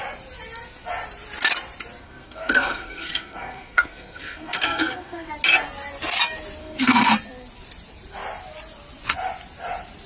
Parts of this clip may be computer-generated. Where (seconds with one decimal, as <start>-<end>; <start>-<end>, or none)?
2.0-5.3; 6.6-7.1